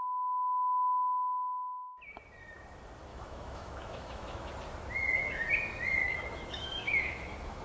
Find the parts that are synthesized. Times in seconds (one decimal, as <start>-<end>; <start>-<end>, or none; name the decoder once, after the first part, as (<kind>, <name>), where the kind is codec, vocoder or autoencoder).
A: 3.1-4.5 (autoencoder, DAC-VAE); 6.0-7.6